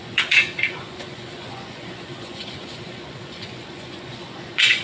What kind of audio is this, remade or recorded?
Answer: remade